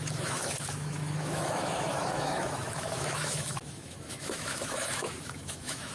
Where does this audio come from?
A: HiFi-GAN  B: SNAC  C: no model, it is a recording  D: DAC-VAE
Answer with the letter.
D